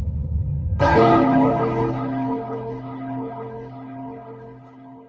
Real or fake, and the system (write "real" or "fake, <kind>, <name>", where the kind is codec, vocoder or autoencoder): fake, codec, HILCodec